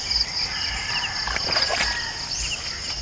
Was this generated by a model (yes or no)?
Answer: no